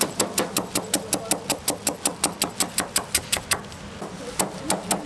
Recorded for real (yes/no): yes